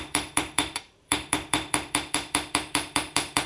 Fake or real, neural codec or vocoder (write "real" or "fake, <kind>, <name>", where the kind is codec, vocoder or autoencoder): fake, vocoder, BigVGAN v2